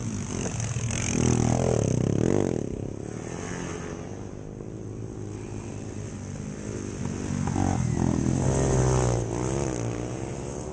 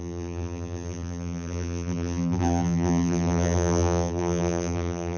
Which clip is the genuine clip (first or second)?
first